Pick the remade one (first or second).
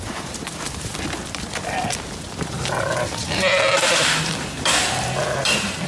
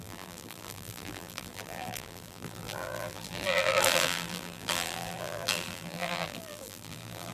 second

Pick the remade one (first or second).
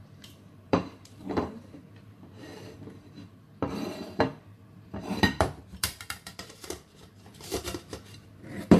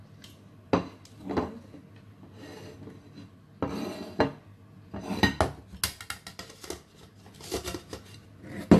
first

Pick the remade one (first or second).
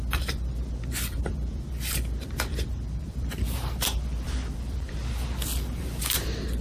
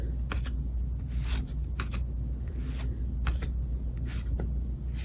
first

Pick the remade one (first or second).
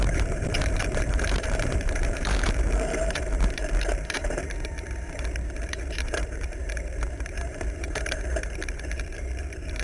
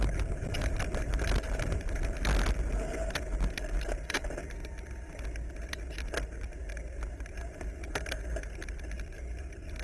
first